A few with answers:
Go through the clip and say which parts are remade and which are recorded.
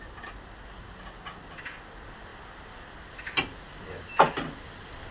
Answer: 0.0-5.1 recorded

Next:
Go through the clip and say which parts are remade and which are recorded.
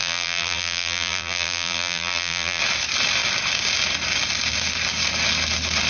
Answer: 0.0-2.6 remade; 2.6-5.9 recorded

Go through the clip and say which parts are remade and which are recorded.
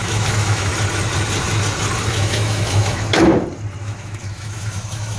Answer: 0.0-0.7 remade; 0.7-2.1 recorded; 2.1-3.3 remade; 3.3-3.8 recorded; 3.8-5.2 remade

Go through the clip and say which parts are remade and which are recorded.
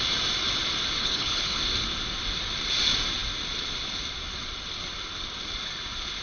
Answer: 0.0-1.0 recorded; 1.0-1.6 remade; 1.6-6.2 recorded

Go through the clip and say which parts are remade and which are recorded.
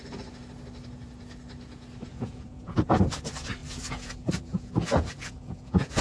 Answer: 0.0-2.1 recorded; 2.1-3.0 remade; 3.0-3.6 recorded; 3.6-6.0 remade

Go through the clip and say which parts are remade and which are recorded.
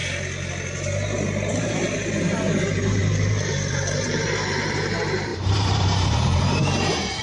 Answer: 0.0-1.5 recorded; 1.5-7.2 remade